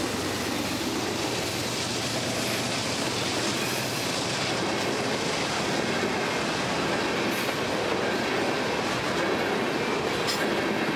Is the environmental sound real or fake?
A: real